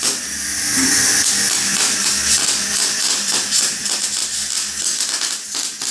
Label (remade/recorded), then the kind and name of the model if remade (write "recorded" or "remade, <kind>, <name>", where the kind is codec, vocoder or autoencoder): recorded